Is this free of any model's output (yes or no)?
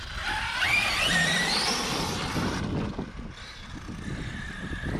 yes